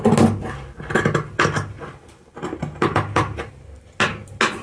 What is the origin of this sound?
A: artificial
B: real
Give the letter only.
B